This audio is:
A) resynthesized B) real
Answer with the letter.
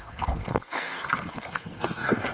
A